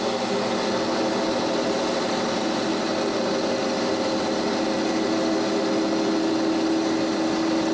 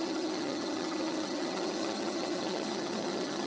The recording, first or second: first